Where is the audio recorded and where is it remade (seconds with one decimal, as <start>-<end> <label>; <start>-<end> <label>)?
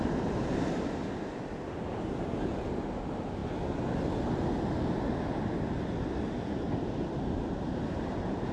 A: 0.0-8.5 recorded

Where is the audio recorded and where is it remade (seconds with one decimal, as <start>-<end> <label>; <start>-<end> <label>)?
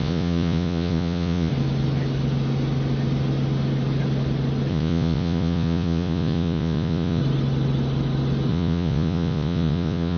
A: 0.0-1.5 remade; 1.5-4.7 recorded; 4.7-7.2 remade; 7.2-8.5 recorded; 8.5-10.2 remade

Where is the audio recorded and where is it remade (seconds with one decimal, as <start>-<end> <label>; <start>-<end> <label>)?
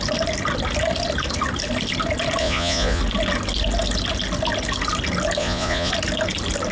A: 0.0-2.4 recorded; 2.4-3.0 remade; 3.0-5.4 recorded; 5.4-5.9 remade; 5.9-6.7 recorded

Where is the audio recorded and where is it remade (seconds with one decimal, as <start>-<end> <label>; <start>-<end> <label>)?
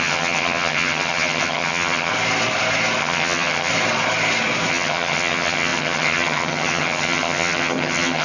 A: 0.0-2.1 remade; 2.1-3.0 recorded; 3.0-3.7 remade; 3.7-4.7 recorded; 4.7-8.2 remade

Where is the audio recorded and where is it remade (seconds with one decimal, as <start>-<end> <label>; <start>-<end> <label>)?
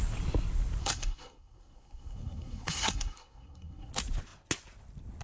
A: 0.0-0.8 recorded; 0.8-3.9 remade; 3.9-5.2 recorded